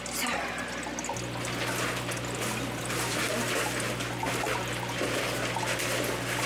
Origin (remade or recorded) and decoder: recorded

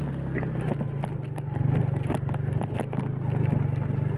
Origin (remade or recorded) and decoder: recorded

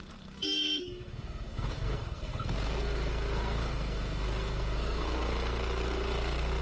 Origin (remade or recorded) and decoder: remade, codec, SNAC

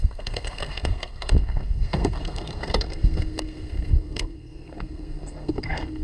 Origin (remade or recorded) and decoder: remade, codec, SNAC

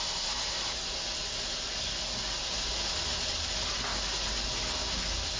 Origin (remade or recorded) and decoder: recorded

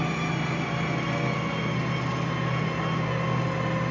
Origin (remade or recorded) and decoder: recorded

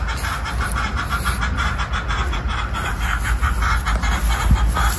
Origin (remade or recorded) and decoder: recorded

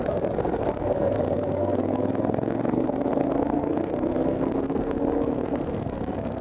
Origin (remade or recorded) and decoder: remade, codec, SNAC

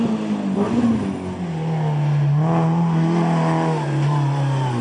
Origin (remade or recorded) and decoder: recorded